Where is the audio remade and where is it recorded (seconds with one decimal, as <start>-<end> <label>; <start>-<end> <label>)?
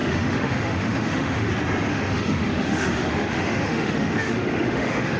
0.0-1.5 remade; 1.5-1.9 recorded; 1.9-5.2 remade